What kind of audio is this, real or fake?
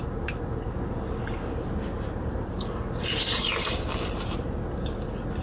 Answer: real